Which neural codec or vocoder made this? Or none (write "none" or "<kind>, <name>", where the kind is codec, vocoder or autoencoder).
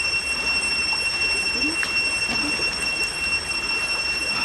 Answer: none